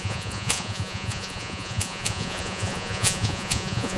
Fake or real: fake